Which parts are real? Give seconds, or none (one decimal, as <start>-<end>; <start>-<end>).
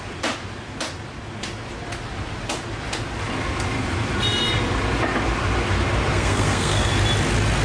0.0-6.1; 6.9-7.6